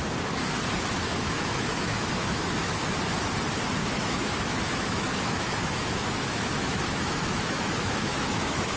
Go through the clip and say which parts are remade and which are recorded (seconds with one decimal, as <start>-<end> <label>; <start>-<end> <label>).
0.0-1.0 recorded; 1.0-2.9 remade; 2.9-3.8 recorded; 3.8-8.8 remade

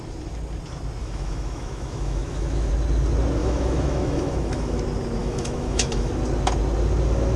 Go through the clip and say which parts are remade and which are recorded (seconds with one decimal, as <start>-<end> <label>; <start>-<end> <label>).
0.0-1.0 recorded; 1.0-2.7 remade; 2.7-3.4 recorded; 3.4-4.8 remade; 4.8-5.2 recorded; 5.2-6.1 remade; 6.1-7.4 recorded